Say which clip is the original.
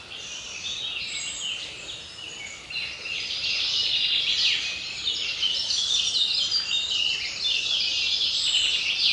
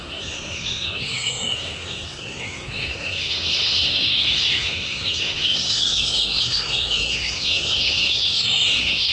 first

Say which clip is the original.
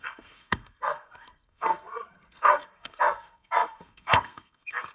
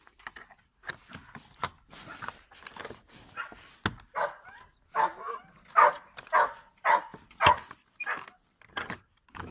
second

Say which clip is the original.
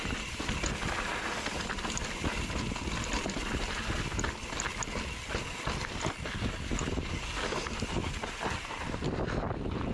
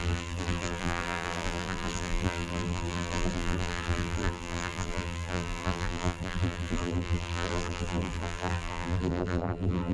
first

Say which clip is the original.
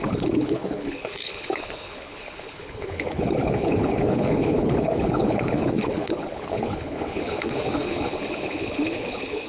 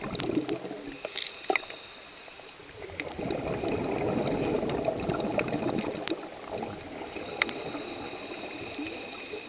second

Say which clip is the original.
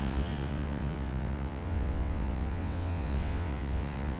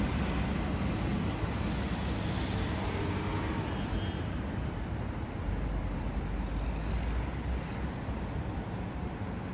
second